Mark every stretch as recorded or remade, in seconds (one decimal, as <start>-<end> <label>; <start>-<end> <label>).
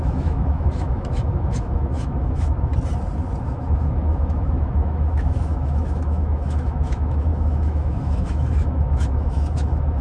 0.0-2.7 remade; 2.7-3.4 recorded; 3.4-10.0 remade